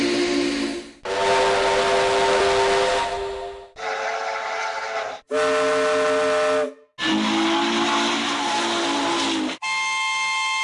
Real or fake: real